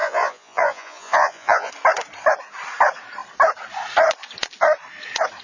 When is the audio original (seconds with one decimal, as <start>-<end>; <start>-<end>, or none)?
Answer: 1.7-5.4